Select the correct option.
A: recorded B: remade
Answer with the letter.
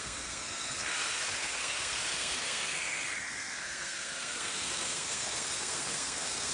B